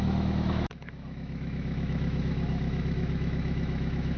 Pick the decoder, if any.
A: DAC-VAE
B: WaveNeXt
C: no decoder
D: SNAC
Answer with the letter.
A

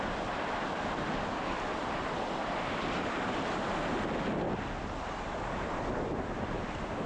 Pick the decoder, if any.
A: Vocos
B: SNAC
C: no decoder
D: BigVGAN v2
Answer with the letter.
C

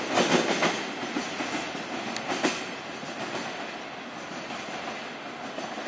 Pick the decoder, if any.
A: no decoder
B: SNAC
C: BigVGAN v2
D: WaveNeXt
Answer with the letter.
A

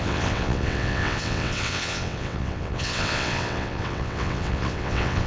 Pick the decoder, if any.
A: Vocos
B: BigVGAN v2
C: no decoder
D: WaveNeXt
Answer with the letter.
D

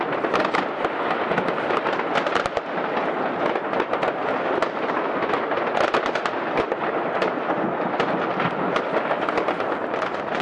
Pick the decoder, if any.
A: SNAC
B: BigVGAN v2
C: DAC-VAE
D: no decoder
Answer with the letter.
D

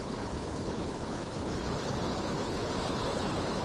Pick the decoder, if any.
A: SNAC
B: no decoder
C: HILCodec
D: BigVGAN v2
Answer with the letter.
C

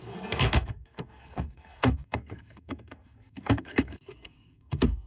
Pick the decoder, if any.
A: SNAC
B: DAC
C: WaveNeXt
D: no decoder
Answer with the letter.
A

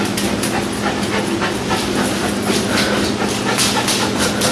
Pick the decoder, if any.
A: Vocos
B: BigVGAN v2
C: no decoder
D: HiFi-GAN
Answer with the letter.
C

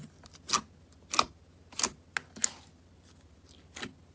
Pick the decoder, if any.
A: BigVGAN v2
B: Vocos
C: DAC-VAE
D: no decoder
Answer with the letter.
D